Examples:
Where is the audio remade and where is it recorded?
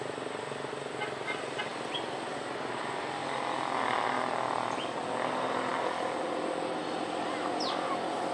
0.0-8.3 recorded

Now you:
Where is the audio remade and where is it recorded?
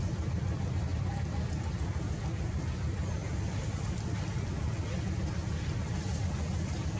0.0-7.0 recorded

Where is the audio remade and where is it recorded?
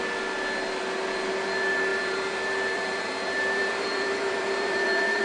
0.0-1.9 recorded; 1.9-5.2 remade